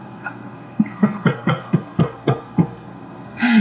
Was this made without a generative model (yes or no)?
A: no